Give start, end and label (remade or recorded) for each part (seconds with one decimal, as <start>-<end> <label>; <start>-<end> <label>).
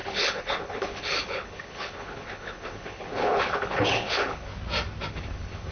0.0-4.5 remade; 4.5-5.1 recorded; 5.1-5.7 remade